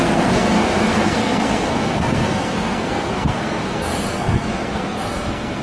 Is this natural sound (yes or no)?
no